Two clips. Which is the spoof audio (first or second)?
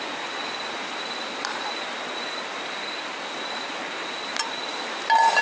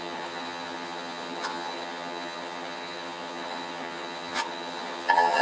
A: second